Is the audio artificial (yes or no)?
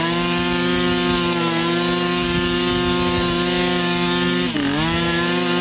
no